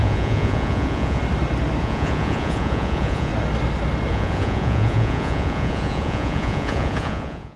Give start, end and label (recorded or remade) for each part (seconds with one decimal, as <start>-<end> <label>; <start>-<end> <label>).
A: 0.0-1.2 remade; 1.2-1.8 recorded; 1.8-3.3 remade; 3.3-4.1 recorded; 4.1-7.6 remade